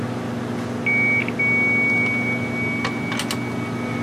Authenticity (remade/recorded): recorded